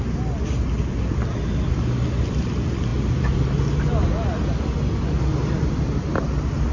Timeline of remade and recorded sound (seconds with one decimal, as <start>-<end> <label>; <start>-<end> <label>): 0.0-6.7 recorded